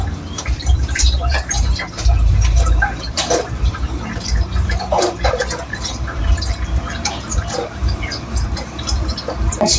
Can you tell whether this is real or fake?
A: fake